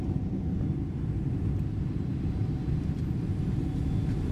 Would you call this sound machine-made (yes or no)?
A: no